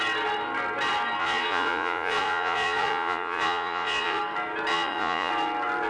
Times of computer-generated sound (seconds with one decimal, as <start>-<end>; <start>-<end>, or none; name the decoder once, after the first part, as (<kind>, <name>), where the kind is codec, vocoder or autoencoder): 1.2-4.2 (vocoder, Vocos); 4.7-5.3